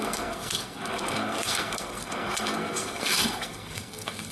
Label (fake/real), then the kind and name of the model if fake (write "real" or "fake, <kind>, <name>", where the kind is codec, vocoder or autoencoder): fake, codec, SNAC